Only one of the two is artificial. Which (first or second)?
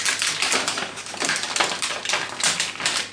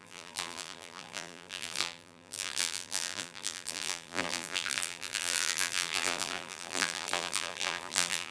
second